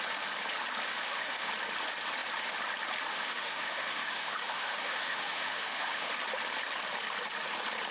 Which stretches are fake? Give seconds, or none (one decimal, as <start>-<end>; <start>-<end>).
0.9-1.5; 3.1-6.1